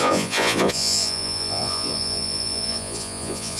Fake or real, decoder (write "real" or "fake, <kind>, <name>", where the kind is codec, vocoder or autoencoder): fake, vocoder, Vocos